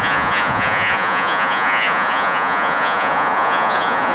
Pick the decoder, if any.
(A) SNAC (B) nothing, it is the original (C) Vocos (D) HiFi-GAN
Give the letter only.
C